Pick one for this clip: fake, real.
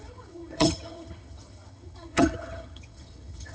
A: fake